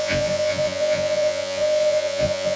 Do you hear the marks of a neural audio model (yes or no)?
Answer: yes